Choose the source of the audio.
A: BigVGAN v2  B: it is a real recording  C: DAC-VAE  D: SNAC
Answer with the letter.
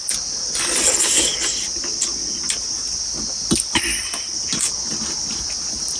B